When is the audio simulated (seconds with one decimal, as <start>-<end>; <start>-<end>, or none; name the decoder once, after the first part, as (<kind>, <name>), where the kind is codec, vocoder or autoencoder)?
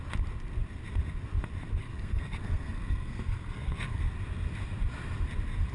1.8-4.0 (codec, SNAC)